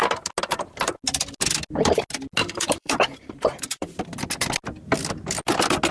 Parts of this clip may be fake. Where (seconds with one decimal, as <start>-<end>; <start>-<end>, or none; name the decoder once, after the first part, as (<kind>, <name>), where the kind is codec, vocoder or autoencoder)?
2.4-4.0 (vocoder, BigVGAN v2)